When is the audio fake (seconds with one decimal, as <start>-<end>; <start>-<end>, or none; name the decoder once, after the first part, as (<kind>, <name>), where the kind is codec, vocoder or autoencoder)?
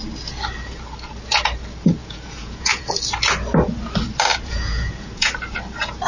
2.0-2.9 (vocoder, Vocos); 4.3-5.3